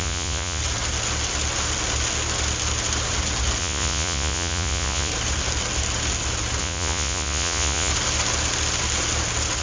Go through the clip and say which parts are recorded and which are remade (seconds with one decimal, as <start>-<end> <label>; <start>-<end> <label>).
0.0-0.6 remade; 0.6-3.6 recorded; 3.6-5.1 remade; 5.1-6.6 recorded; 6.6-7.9 remade; 7.9-9.6 recorded